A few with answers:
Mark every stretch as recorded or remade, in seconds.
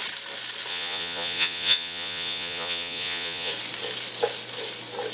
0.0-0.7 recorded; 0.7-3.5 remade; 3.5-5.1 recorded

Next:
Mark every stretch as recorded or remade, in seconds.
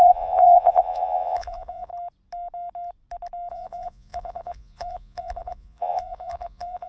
0.0-1.9 remade; 1.9-3.5 recorded; 3.5-6.9 remade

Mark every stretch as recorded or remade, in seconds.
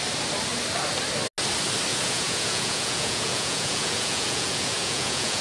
0.0-1.9 recorded; 1.9-5.4 remade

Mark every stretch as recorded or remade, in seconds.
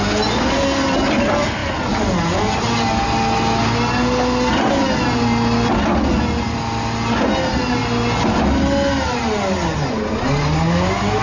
0.0-11.2 recorded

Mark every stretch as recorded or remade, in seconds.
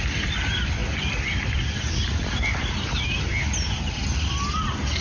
0.0-5.0 recorded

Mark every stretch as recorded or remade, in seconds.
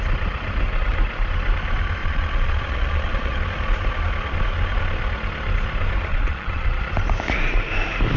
0.0-2.0 recorded; 2.0-3.4 remade; 3.4-6.1 recorded; 6.1-6.8 remade; 6.8-8.2 recorded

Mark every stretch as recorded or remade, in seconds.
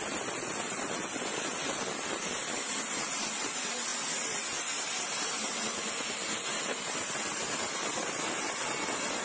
0.0-9.2 recorded